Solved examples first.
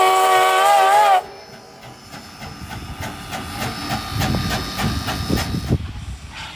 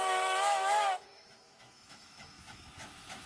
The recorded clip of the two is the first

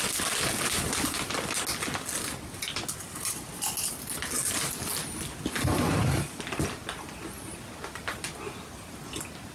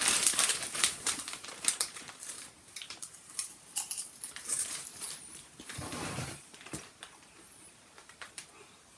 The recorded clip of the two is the first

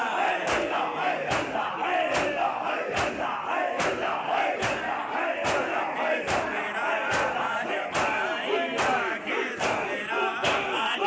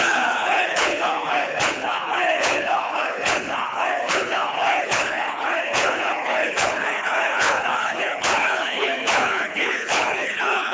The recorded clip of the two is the first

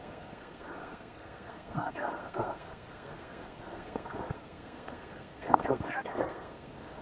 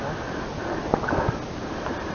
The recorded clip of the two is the second